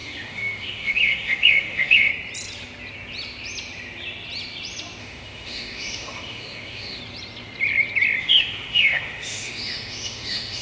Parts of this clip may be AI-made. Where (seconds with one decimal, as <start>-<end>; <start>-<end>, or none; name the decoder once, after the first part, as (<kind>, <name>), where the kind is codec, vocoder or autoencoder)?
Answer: 0.0-2.1 (autoencoder, DAC-VAE); 5.0-7.0; 8.2-10.6